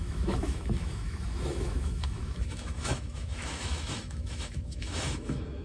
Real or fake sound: fake